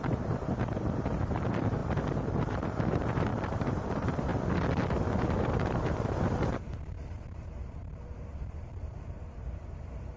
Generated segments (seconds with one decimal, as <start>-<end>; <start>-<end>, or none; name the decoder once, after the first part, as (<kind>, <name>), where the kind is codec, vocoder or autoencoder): 0.0-1.8 (vocoder, BigVGAN v2); 2.4-4.3; 5.2-10.2